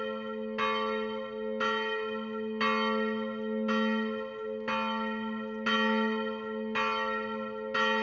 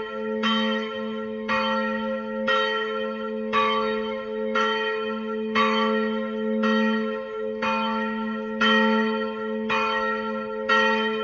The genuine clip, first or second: first